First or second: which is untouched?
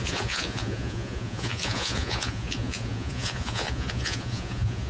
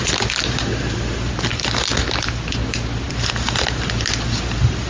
second